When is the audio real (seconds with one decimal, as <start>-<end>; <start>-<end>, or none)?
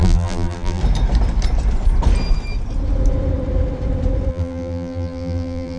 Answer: 0.8-4.3